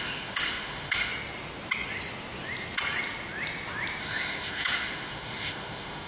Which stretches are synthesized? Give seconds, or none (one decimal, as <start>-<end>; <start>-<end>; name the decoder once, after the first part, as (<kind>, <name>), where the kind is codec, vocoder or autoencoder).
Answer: 0.0-1.1 (autoencoder, DAC-VAE); 4.0-6.1